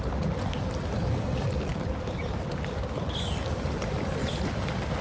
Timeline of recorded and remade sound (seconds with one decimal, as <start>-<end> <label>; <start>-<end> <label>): 0.0-5.0 recorded